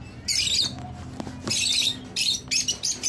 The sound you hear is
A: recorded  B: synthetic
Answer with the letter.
A